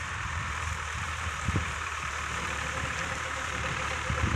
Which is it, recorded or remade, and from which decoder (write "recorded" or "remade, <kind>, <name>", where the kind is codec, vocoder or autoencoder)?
remade, vocoder, BigVGAN v2